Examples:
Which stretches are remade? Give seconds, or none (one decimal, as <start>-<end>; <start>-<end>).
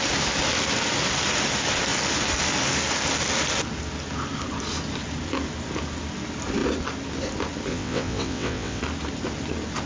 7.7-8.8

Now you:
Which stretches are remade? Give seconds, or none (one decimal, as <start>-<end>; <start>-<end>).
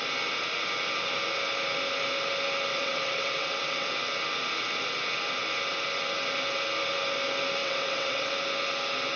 2.7-3.9; 7.6-8.3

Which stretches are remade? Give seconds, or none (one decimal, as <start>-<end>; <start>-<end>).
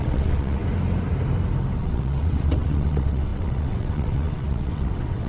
0.0-0.6; 1.8-5.3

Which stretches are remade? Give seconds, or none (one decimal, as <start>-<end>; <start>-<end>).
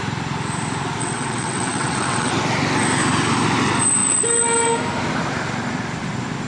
1.0-2.3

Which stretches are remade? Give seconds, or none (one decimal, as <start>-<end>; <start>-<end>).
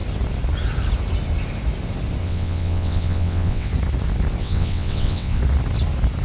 2.2-3.7; 4.4-5.4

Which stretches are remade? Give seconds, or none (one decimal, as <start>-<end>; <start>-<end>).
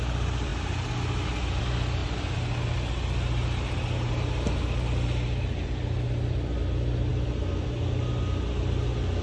none